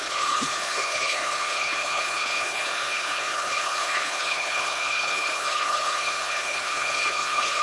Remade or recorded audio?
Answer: remade